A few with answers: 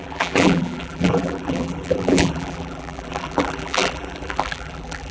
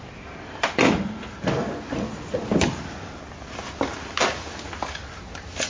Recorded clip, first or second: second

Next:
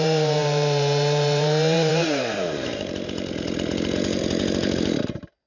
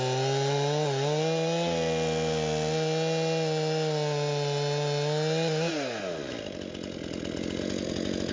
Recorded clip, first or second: second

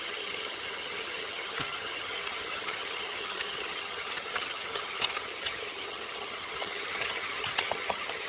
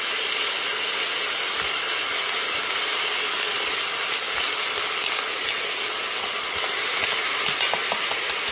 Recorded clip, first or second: second